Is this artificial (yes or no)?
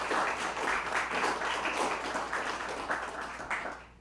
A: no